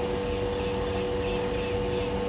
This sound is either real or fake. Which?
real